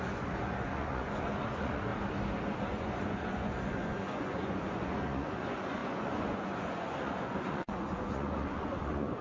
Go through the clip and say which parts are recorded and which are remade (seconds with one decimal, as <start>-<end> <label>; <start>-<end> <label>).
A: 0.0-1.9 remade; 1.9-2.7 recorded; 2.7-9.2 remade